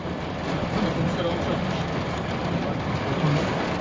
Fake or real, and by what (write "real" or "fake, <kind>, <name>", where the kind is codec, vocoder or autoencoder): real